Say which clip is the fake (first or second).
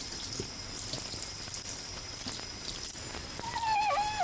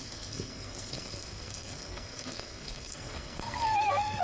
second